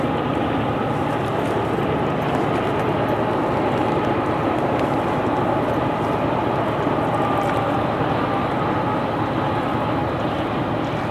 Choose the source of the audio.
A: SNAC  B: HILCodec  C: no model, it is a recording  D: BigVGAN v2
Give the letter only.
C